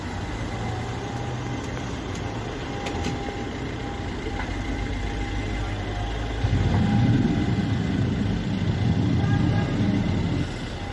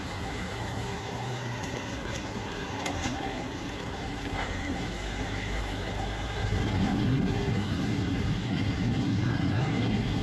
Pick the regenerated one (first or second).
second